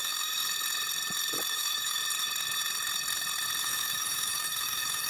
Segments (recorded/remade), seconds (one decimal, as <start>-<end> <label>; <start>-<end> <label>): 0.0-0.4 remade; 0.4-1.5 recorded; 1.5-2.0 remade; 2.0-3.6 recorded; 3.6-5.1 remade